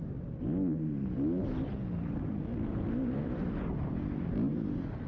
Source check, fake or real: real